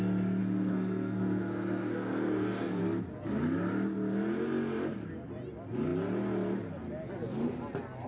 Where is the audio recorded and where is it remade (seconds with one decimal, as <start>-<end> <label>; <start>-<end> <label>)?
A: 0.0-0.4 recorded; 0.4-2.8 remade; 2.8-8.1 recorded